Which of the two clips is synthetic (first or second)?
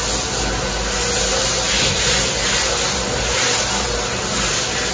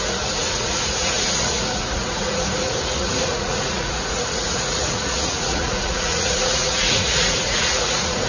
second